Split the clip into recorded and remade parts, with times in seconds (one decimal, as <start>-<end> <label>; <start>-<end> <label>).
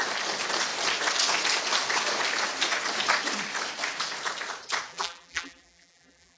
0.0-4.9 recorded; 4.9-6.4 remade